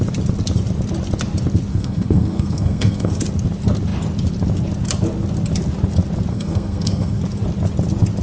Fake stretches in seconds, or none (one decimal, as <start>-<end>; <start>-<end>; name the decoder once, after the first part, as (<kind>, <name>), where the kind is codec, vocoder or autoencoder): 1.7-3.1 (codec, SNAC); 6.3-7.2